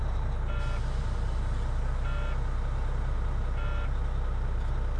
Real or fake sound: real